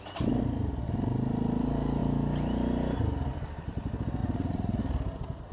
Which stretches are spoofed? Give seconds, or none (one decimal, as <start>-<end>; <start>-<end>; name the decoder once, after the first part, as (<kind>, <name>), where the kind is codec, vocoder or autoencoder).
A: 4.2-4.8 (vocoder, Vocos)